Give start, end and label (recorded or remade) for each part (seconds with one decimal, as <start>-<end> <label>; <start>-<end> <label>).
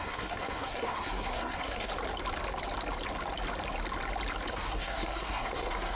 0.0-1.9 remade; 1.9-4.5 recorded; 4.5-6.0 remade